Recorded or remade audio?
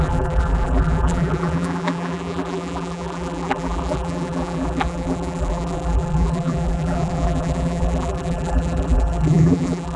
remade